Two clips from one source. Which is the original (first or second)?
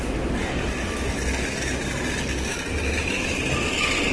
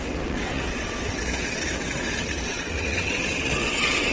first